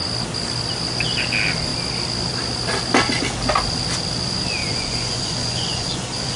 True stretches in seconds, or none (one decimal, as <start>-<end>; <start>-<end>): 0.0-4.6